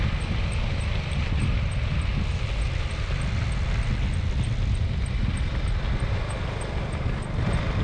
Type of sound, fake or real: real